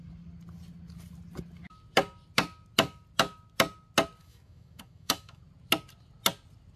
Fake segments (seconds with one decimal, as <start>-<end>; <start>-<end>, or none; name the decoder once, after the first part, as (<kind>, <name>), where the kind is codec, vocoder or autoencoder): 4.2-5.4 (autoencoder, DAC-VAE)